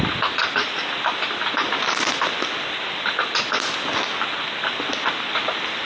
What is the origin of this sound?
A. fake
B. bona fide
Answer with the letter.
B